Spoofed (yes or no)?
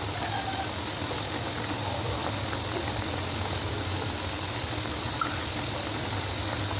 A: no